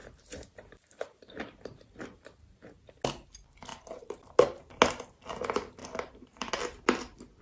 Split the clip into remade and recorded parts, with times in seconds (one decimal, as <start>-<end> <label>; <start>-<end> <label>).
0.0-2.9 remade; 2.9-3.7 recorded; 3.7-4.3 remade; 4.3-5.8 recorded; 5.8-6.5 remade; 6.5-7.4 recorded